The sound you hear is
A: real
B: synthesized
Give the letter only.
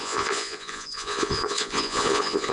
B